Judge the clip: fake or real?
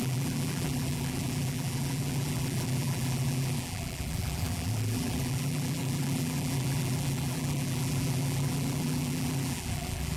fake